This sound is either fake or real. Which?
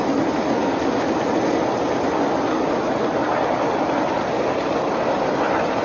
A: real